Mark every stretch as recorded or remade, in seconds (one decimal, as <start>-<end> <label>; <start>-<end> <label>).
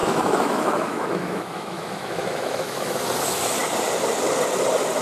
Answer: 0.0-3.0 remade; 3.0-5.0 recorded